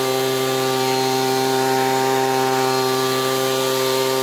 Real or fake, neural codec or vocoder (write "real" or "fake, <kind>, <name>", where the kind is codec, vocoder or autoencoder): fake, vocoder, BigVGAN v2